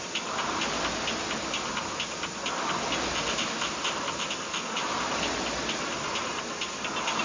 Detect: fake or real real